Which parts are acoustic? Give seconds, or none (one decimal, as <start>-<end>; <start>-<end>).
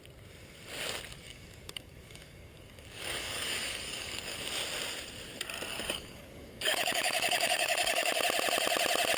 0.0-1.1; 4.4-5.7; 8.2-9.2